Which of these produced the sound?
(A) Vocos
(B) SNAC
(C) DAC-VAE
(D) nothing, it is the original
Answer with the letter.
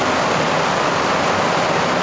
D